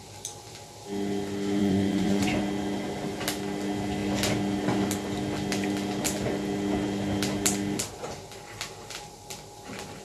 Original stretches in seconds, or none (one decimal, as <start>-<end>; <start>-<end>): 0.0-1.6; 2.4-10.0